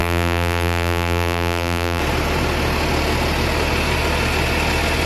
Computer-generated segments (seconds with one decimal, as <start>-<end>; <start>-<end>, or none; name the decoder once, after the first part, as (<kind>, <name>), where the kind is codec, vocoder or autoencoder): 0.0-2.0 (vocoder, BigVGAN v2)